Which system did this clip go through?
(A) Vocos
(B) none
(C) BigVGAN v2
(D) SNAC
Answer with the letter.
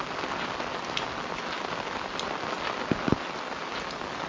B